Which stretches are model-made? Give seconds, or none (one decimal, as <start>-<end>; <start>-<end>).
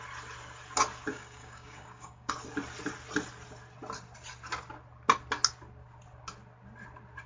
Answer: 1.1-2.3